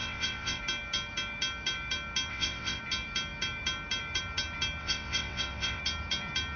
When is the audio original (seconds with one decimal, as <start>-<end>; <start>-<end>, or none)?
0.6-2.3; 2.8-4.8; 5.8-6.6